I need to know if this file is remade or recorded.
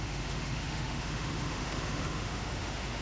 remade